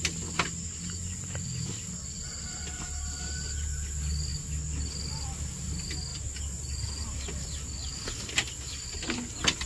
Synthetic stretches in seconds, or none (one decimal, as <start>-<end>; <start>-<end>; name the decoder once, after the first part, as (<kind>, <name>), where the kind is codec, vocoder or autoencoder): none